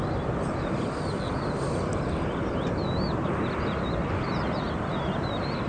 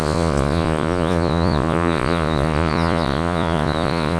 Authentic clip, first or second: first